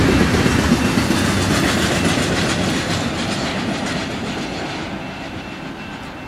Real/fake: real